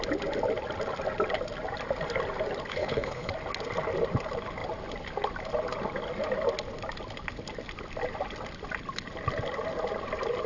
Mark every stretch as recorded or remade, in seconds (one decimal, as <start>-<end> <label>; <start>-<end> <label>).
0.0-2.7 recorded; 2.7-3.3 remade; 3.3-10.5 recorded